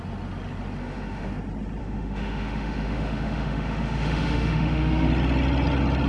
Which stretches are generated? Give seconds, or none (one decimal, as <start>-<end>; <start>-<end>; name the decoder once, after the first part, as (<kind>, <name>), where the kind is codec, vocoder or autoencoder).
0.8-1.3 (autoencoder, DAC-VAE); 1.8-5.1